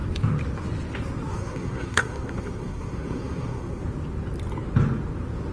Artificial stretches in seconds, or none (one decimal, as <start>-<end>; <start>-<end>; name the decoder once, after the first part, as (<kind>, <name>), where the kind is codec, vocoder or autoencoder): 1.3-3.8 (codec, SNAC)